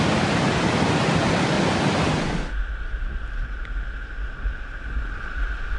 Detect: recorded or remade recorded